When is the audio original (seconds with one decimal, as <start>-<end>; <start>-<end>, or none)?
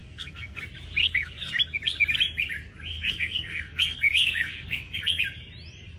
0.6-1.0; 1.5-2.9; 5.2-6.0